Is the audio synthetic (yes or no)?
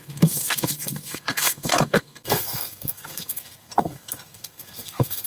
yes